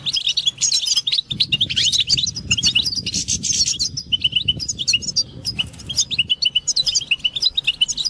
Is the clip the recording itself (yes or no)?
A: yes